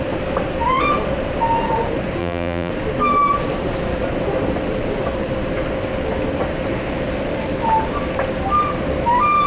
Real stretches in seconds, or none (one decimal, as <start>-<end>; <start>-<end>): 0.0-2.2; 2.7-9.5